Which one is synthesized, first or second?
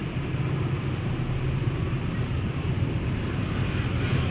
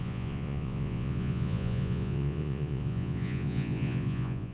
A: second